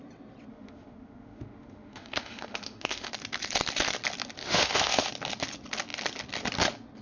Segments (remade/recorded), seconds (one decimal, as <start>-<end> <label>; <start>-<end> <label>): 0.0-0.5 recorded; 0.5-3.1 remade; 3.1-4.4 recorded; 4.4-5.1 remade; 5.1-7.0 recorded